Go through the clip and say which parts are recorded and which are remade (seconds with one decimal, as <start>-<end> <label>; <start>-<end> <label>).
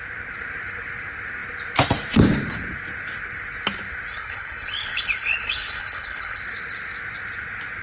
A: 0.0-4.1 recorded; 4.1-6.4 remade; 6.4-7.8 recorded